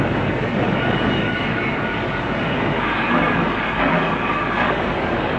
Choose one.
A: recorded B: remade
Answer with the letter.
B